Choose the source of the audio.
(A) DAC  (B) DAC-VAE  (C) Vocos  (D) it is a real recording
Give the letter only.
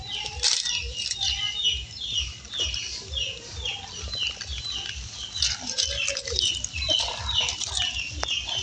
D